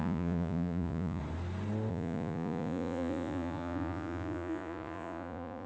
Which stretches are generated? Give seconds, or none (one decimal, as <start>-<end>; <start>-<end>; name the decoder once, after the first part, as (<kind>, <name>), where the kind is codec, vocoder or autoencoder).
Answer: 0.0-1.2 (vocoder, Vocos); 1.9-5.7